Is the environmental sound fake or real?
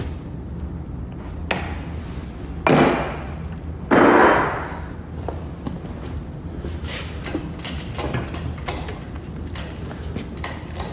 real